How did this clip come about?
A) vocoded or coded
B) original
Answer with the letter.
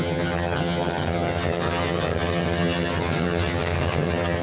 A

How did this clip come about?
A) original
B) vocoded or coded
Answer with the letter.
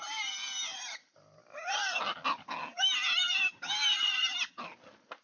A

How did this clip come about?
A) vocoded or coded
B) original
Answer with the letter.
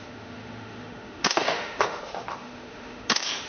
A